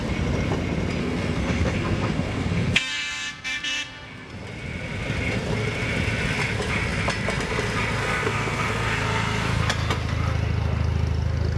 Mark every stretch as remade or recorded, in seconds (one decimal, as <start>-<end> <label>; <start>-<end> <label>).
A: 0.0-1.0 recorded; 1.0-4.3 remade; 4.3-8.0 recorded; 8.0-9.6 remade; 9.6-11.6 recorded